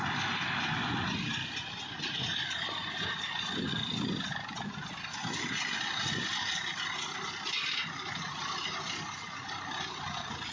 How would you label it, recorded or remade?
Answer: recorded